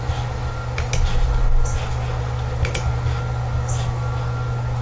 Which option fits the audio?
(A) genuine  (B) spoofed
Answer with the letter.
A